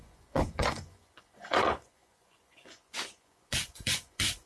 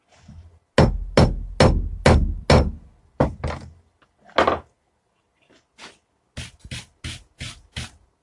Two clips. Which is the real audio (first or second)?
second